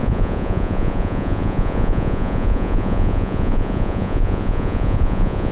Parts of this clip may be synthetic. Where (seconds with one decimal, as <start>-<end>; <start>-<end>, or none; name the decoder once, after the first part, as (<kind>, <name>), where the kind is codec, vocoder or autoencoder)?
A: 0.0-5.5 (vocoder, Vocos)